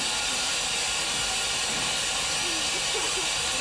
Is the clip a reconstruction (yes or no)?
no